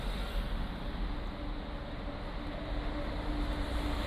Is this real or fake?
real